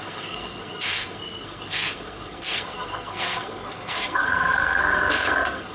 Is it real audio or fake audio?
fake